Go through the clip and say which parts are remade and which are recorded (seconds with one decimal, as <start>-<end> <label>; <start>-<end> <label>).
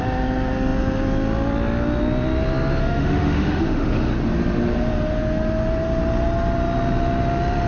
0.0-2.8 recorded; 2.8-4.1 remade; 4.1-7.7 recorded